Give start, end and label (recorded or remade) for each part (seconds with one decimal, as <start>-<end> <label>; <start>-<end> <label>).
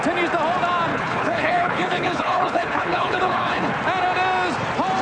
0.0-0.9 recorded; 0.9-3.7 remade; 3.7-5.0 recorded